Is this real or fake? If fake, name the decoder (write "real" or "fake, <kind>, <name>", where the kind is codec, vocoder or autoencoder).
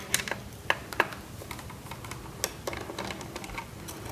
real